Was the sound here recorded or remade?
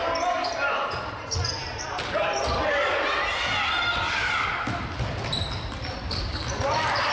remade